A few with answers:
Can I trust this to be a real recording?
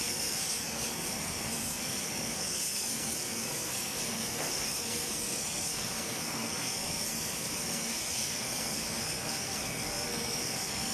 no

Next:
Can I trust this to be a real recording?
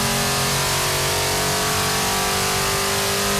yes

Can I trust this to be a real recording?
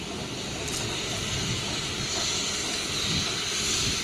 yes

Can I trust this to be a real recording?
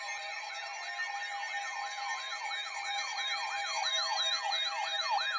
yes